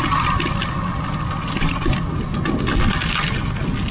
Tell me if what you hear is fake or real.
real